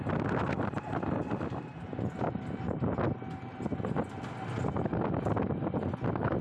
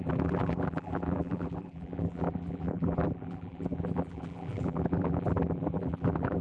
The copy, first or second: second